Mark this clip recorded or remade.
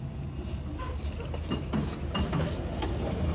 recorded